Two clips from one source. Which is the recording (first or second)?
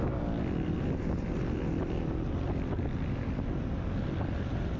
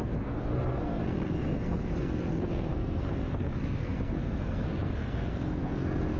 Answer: first